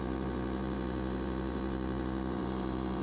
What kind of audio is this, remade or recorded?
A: remade